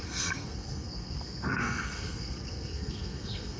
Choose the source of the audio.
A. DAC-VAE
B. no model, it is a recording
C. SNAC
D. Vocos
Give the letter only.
C